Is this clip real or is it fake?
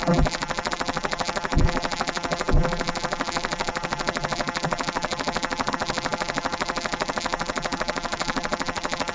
fake